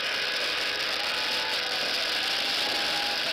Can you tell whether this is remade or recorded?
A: recorded